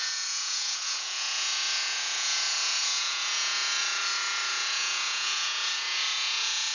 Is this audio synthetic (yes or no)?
yes